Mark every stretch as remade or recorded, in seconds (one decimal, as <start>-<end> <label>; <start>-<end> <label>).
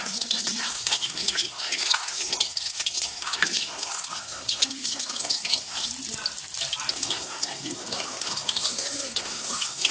0.0-5.9 remade; 5.9-6.9 recorded; 6.9-9.9 remade